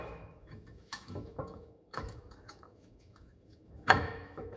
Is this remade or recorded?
remade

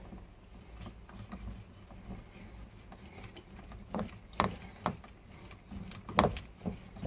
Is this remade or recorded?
recorded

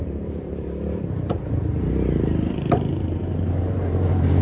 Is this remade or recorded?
remade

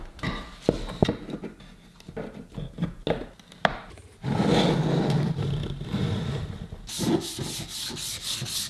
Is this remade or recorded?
recorded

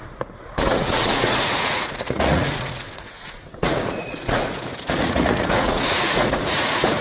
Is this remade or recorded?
remade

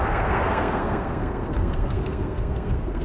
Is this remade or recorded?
remade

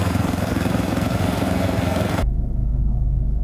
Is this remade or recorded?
remade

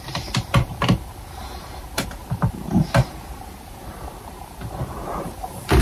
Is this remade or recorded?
remade